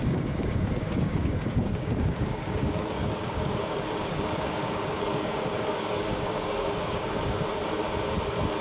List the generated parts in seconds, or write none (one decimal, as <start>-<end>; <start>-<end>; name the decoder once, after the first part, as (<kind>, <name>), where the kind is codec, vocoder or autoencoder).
0.0-7.5 (codec, DAC)